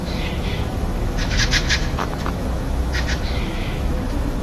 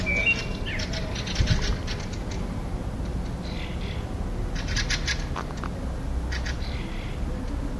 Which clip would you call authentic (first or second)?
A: second